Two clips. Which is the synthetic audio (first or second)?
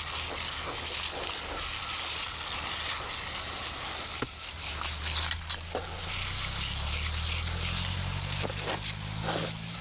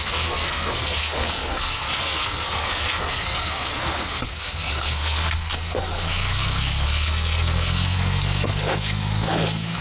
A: second